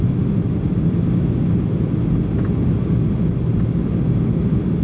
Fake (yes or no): no